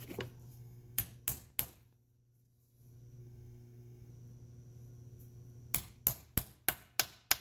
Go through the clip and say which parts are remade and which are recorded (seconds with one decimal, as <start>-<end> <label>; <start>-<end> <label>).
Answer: 0.0-0.5 recorded; 0.5-1.0 remade; 1.0-3.2 recorded; 3.2-4.1 remade; 4.1-7.4 recorded